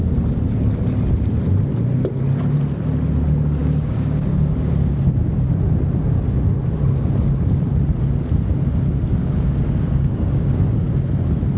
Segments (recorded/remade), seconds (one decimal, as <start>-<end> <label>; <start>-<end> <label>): 0.0-3.6 recorded; 3.6-4.7 remade; 4.7-9.2 recorded; 9.2-10.6 remade; 10.6-11.6 recorded